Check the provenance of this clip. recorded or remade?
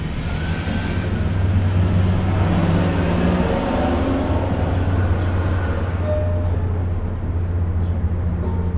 recorded